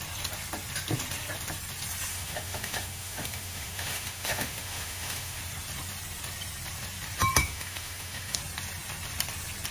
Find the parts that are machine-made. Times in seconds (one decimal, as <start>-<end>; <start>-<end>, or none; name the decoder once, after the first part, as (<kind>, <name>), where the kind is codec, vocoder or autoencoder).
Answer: 2.1-5.4 (autoencoder, DAC-VAE); 7.4-8.4